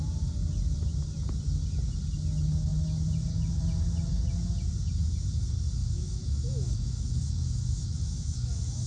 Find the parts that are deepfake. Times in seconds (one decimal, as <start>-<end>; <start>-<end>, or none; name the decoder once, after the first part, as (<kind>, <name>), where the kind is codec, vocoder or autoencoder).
5.8-8.9 (autoencoder, DAC-VAE)